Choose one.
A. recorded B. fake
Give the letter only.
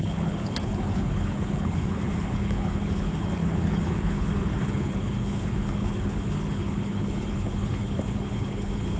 B